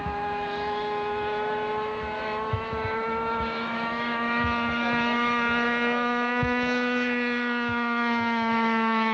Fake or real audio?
fake